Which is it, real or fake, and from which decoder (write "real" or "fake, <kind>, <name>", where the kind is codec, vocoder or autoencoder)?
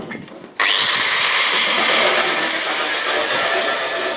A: real